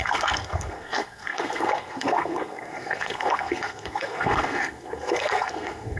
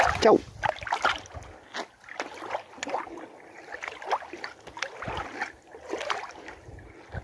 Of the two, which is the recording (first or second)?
second